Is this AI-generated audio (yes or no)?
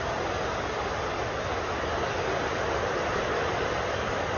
no